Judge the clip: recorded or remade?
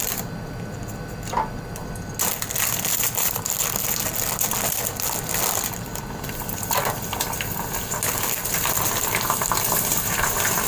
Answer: recorded